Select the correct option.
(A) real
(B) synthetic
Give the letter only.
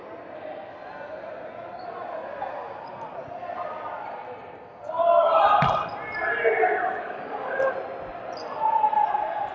A